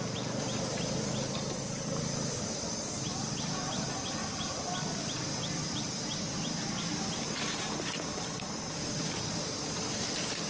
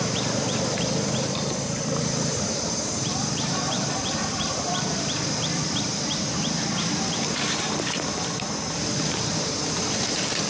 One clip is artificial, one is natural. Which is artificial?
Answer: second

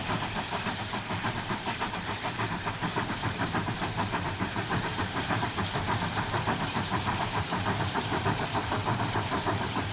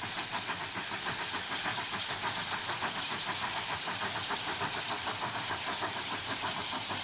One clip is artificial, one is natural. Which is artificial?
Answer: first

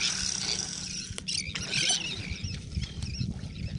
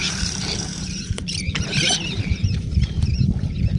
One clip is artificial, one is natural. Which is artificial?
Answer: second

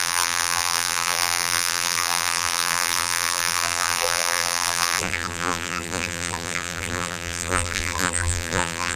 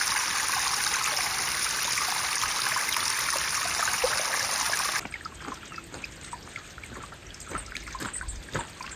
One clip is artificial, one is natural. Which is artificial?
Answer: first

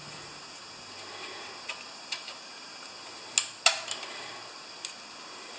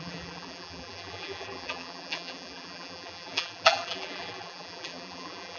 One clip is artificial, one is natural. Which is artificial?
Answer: second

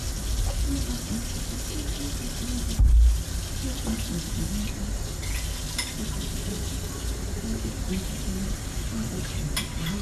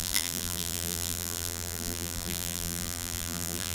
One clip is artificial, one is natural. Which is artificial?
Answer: second